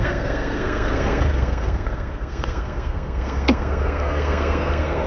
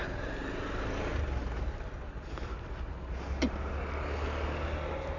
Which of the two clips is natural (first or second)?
second